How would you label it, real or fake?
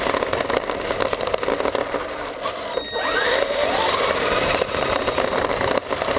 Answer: real